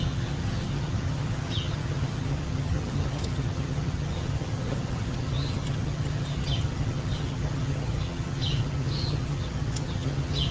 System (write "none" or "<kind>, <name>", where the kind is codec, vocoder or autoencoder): vocoder, HiFi-GAN